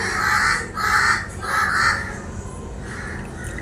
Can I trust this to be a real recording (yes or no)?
yes